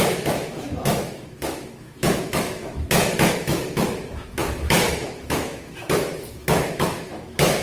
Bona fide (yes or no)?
no